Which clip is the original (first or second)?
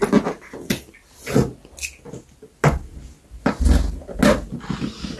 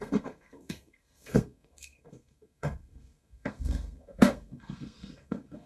first